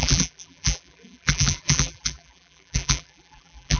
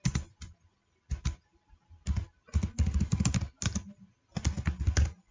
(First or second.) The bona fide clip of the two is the second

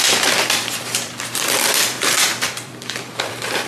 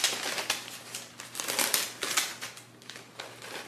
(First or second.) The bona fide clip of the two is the second